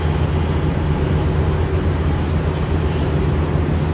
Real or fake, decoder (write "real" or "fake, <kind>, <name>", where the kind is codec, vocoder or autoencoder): real